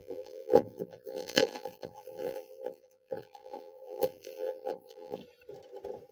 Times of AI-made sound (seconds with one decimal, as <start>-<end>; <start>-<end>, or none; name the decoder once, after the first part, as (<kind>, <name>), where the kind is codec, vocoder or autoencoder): 0.0-5.2 (vocoder, BigVGAN v2)